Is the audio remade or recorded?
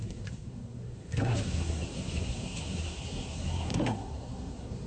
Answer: remade